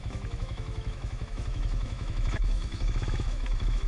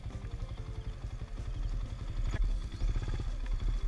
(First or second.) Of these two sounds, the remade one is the first